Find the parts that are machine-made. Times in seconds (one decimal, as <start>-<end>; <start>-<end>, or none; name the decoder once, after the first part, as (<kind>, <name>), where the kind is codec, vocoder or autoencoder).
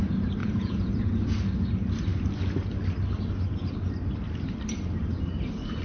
0.4-1.0 (vocoder, Vocos)